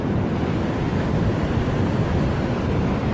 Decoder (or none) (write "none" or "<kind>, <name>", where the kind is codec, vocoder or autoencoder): none